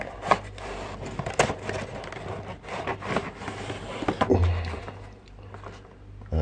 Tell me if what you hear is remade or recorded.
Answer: recorded